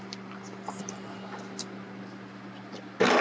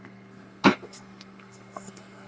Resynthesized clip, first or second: second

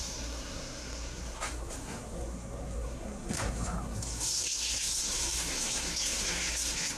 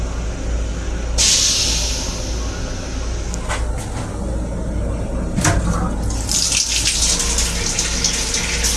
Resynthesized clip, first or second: first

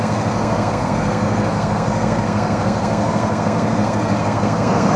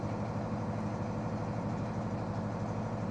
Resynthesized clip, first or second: first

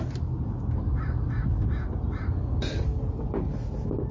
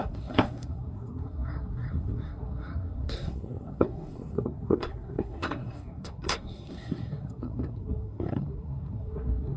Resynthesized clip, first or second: second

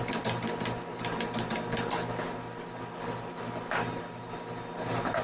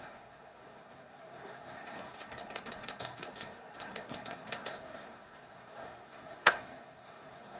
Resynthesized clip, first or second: second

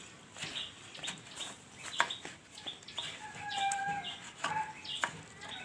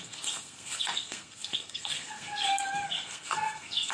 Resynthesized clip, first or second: second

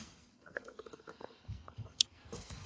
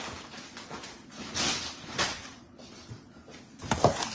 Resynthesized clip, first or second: first